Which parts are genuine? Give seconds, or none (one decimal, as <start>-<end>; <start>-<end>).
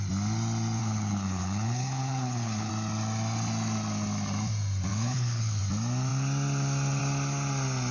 0.0-0.8; 2.7-4.9; 5.6-7.9